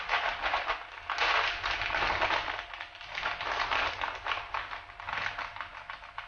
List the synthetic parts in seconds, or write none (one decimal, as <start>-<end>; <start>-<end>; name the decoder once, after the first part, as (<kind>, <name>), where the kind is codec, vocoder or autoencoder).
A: none

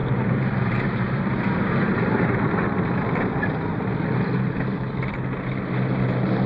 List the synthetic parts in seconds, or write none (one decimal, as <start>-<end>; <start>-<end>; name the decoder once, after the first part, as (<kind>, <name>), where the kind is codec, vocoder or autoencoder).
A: 0.0-3.9 (vocoder, BigVGAN v2)

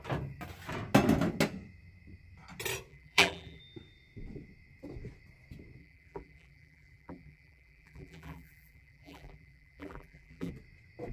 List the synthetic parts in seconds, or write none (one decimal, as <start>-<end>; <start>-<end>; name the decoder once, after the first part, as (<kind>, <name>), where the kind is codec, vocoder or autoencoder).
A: 2.9-3.6 (vocoder, BigVGAN v2); 5.8-10.5

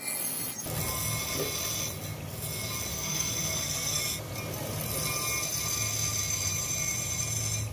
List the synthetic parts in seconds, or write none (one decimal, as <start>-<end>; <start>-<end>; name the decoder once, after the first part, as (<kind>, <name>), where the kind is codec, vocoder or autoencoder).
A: 2.9-4.0 (codec, SNAC)

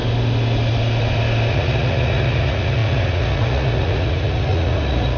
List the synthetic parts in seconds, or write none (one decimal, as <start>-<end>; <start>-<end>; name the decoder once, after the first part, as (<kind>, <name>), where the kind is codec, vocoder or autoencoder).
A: 1.5-5.2 (vocoder, Vocos)